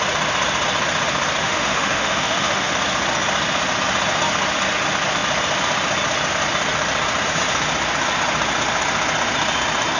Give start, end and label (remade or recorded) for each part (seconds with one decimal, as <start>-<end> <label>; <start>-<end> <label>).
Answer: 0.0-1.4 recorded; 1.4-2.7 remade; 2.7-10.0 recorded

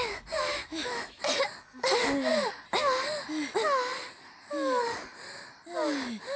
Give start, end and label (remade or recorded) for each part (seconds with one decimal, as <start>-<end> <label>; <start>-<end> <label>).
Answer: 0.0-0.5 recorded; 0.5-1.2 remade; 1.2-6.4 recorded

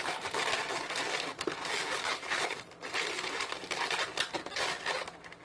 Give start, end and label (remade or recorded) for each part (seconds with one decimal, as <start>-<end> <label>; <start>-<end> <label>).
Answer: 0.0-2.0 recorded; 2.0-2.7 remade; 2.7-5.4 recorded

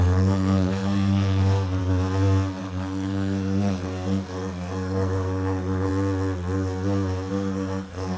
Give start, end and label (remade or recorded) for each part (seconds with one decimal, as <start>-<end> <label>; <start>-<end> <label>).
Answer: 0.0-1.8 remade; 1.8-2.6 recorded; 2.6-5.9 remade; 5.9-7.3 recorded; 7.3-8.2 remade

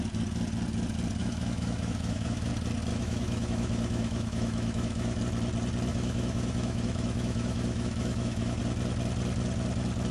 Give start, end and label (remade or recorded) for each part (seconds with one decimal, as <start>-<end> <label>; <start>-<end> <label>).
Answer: 0.0-1.2 recorded; 1.2-2.5 remade; 2.5-2.9 recorded; 2.9-5.2 remade; 5.2-5.9 recorded; 5.9-8.6 remade; 8.6-10.1 recorded

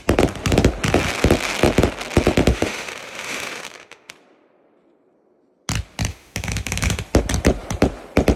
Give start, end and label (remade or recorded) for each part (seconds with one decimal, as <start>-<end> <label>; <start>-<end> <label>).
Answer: 0.0-2.5 recorded; 2.5-4.1 remade; 4.1-6.1 recorded; 6.1-7.0 remade; 7.0-8.4 recorded